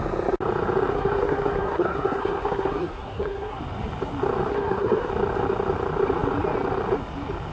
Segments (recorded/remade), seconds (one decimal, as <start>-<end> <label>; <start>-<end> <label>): 0.0-0.9 recorded; 0.9-3.6 remade; 3.6-4.5 recorded; 4.5-5.1 remade; 5.1-7.5 recorded